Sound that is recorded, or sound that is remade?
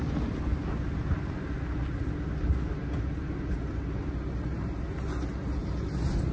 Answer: recorded